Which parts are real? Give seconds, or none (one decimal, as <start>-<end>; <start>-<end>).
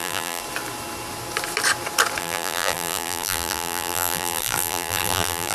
0.4-2.2